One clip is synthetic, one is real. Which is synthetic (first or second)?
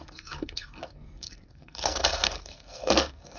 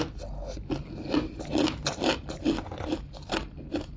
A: first